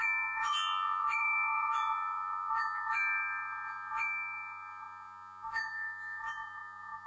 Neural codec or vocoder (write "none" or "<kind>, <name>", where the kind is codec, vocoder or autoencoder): vocoder, Vocos